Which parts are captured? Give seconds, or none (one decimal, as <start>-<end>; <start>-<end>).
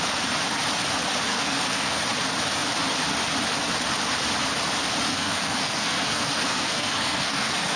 0.0-1.3; 2.0-5.1